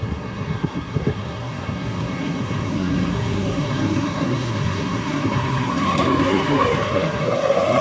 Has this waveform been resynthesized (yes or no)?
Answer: yes